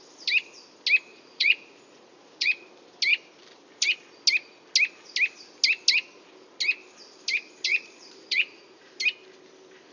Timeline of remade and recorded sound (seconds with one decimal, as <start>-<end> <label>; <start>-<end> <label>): 0.0-1.1 recorded; 1.1-2.7 remade; 2.7-7.7 recorded; 7.7-9.0 remade; 9.0-9.9 recorded